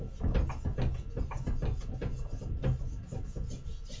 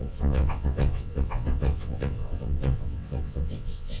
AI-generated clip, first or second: second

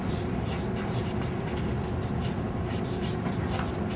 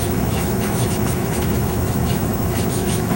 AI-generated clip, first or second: second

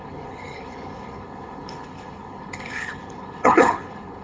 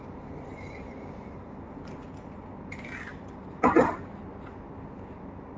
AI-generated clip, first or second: first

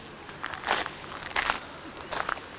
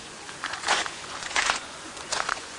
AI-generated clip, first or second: second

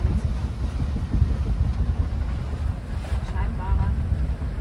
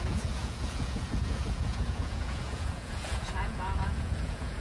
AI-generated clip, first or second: second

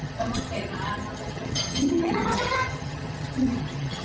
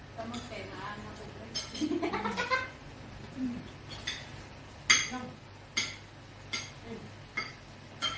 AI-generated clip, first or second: first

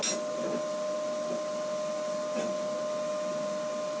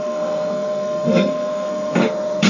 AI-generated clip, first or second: second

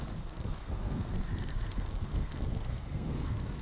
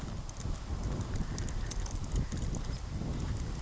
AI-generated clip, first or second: first